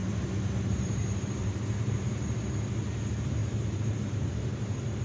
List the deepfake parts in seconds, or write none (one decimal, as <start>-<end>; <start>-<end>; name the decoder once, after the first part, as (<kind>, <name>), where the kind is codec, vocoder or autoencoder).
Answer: 0.0-2.4 (vocoder, BigVGAN v2); 3.4-5.0